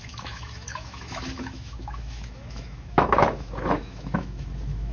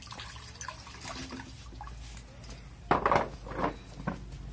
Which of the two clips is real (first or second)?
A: second